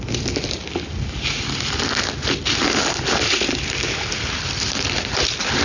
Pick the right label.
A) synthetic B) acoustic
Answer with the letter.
B